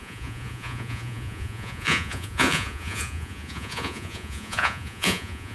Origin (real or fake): fake